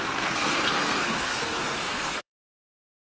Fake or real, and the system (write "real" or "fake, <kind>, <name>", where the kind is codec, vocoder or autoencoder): fake, codec, SNAC